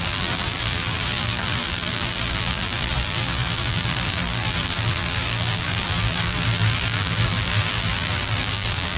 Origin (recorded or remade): remade